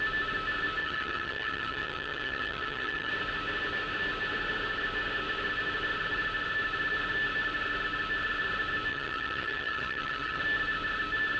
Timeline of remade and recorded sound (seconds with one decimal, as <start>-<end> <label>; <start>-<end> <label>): 0.0-0.8 recorded; 0.8-3.1 remade; 3.1-8.9 recorded; 8.9-10.4 remade; 10.4-11.4 recorded